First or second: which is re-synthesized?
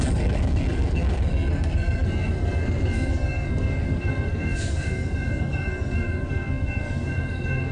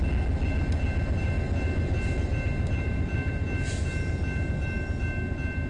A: first